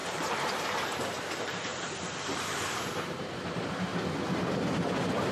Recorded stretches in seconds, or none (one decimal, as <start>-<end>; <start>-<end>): 1.7-2.2; 3.9-4.6